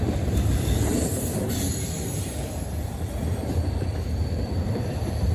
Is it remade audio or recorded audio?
remade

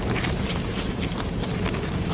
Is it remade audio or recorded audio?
remade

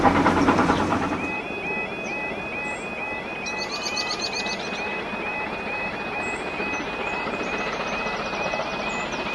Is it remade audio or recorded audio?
remade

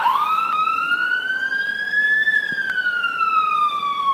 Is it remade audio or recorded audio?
remade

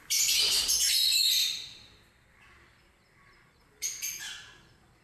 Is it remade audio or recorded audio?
remade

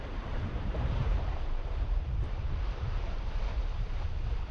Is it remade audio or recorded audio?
remade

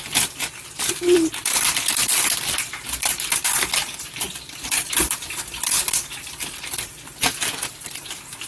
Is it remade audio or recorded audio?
remade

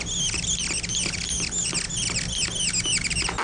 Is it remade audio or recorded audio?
recorded